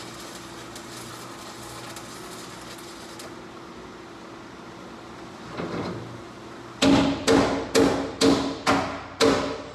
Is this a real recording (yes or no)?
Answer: yes